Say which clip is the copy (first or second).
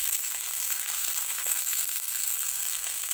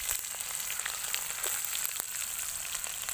first